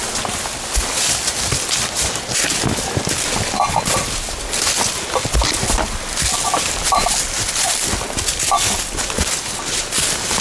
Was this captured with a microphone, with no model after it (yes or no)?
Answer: yes